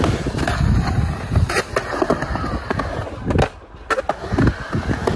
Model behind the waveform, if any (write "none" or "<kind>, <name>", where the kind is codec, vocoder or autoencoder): none